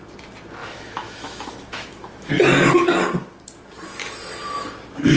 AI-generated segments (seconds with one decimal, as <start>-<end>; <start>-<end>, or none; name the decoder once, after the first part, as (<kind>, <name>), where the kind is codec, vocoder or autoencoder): 0.6-2.3 (autoencoder, DAC-VAE)